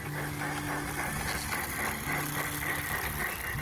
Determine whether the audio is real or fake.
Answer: real